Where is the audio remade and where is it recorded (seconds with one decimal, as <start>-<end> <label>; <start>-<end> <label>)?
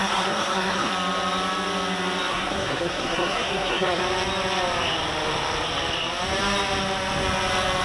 0.0-0.9 remade; 0.9-2.3 recorded; 2.3-4.0 remade; 4.0-7.8 recorded